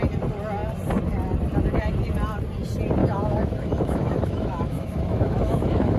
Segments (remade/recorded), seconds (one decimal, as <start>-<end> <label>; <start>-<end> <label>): 0.0-3.0 recorded; 3.0-6.0 remade